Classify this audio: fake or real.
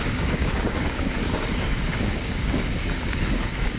fake